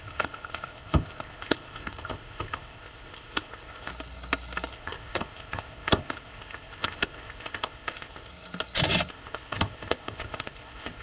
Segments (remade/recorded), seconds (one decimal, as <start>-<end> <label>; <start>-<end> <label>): 0.0-3.9 remade; 3.9-4.7 recorded; 4.7-8.3 remade; 8.3-9.1 recorded; 9.1-11.0 remade